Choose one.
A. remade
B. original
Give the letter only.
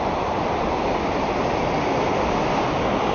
B